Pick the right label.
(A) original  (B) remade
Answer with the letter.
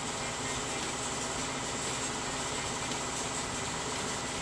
A